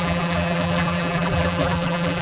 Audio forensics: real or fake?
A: fake